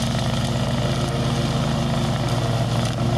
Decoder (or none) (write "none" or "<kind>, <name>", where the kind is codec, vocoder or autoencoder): none